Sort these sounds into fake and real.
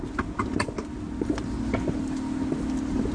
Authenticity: real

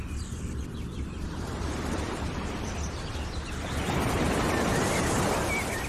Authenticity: fake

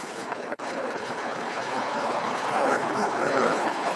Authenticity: fake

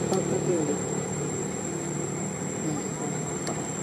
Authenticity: fake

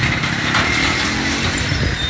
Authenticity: real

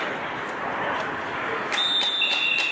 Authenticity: real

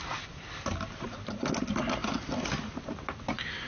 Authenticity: real